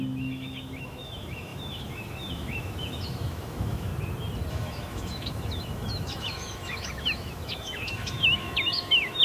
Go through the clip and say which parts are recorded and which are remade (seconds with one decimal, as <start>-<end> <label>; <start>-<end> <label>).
0.0-3.9 remade; 3.9-4.5 recorded; 4.5-9.2 remade